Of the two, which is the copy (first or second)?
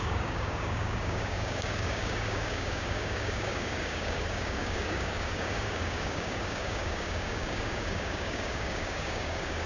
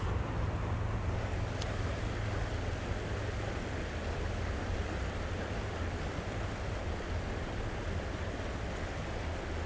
first